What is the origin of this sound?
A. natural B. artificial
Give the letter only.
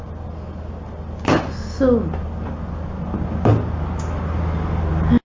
A